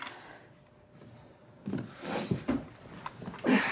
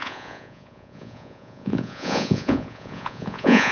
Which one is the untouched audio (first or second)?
first